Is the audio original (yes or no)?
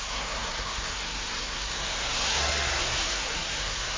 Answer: no